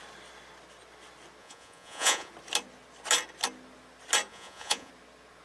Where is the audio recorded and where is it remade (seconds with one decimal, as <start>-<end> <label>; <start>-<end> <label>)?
0.0-1.4 recorded; 1.4-2.3 remade; 2.3-4.3 recorded; 4.3-4.9 remade; 4.9-5.4 recorded

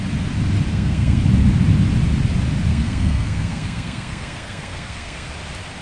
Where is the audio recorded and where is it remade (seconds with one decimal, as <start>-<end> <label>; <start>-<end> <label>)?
0.0-0.7 recorded; 0.7-1.2 remade; 1.2-2.7 recorded; 2.7-5.3 remade; 5.3-5.8 recorded

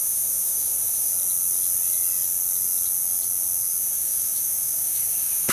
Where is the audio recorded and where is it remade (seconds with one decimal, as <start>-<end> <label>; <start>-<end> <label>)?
0.0-1.1 remade; 1.1-3.8 recorded; 3.8-5.5 remade